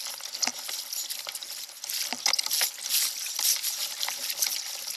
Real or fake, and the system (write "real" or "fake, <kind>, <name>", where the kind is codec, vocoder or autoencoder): real